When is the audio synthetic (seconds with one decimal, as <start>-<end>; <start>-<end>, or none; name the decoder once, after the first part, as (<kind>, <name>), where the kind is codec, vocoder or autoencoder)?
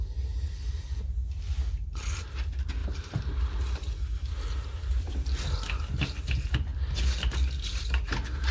none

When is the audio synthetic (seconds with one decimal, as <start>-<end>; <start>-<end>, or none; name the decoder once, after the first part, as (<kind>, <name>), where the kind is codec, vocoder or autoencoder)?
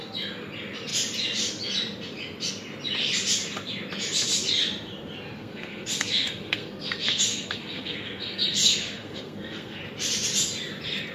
5.4-9.8 (codec, SNAC)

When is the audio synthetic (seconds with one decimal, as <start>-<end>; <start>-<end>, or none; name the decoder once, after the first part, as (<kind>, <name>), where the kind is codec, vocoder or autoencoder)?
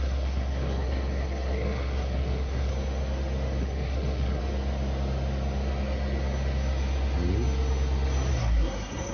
0.0-2.7 (codec, SNAC); 3.6-4.4; 8.3-9.1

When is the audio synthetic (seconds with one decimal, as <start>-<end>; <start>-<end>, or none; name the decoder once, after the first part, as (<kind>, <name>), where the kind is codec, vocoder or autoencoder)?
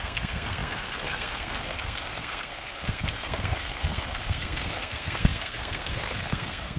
0.0-6.8 (codec, SNAC)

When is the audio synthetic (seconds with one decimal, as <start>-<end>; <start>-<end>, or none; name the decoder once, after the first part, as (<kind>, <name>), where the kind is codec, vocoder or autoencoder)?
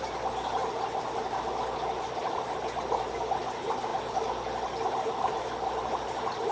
none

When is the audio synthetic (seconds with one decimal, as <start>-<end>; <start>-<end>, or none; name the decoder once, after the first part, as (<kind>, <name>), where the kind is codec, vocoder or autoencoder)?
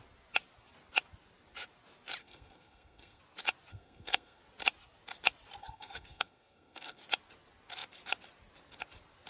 2.2-3.2 (codec, SNAC); 3.7-4.4; 5.6-7.0